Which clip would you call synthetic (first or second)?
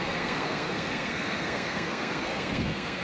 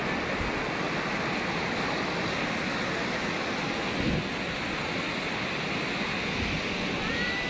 first